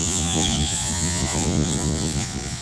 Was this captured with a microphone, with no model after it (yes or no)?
no